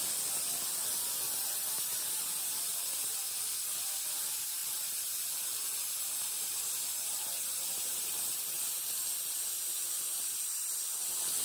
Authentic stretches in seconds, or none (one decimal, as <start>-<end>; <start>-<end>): 0.0-1.4; 3.1-4.6; 8.6-11.4